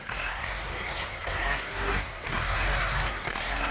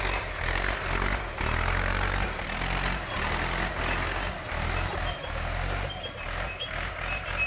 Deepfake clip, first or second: first